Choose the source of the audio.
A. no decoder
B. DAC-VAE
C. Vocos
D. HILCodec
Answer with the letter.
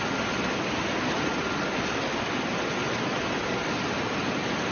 A